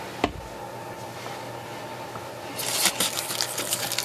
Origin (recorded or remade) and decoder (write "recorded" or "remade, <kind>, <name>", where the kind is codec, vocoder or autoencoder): recorded